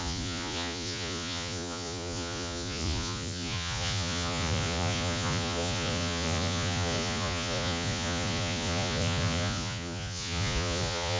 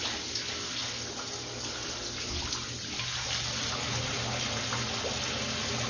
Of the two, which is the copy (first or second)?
first